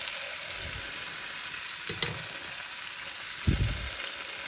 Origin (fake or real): real